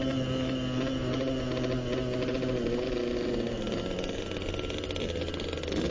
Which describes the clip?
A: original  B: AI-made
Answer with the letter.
A